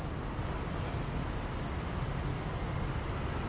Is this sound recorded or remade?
recorded